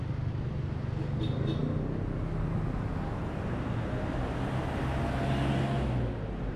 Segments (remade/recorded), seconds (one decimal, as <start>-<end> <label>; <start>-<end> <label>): 0.0-6.6 recorded